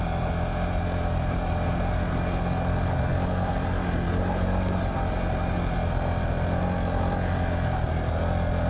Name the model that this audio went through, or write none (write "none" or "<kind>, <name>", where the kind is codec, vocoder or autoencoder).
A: none